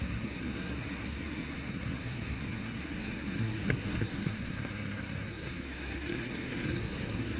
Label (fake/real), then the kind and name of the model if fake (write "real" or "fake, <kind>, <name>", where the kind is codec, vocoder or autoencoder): fake, codec, SNAC